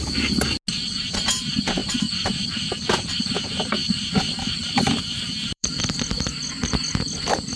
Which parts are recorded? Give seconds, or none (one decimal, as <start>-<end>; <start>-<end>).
0.0-3.8; 5.8-7.6